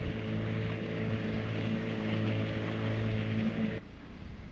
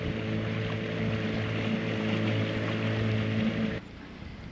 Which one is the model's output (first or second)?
first